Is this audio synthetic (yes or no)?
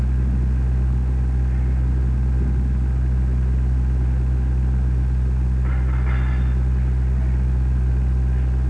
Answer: no